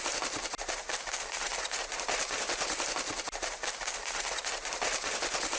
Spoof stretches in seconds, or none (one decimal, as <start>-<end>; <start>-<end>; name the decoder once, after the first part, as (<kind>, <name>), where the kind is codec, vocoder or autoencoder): none